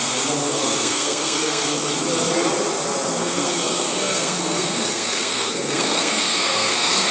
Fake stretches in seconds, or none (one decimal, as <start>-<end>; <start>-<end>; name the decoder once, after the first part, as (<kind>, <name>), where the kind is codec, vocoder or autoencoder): 0.4-1.9 (codec, SNAC); 3.2-7.1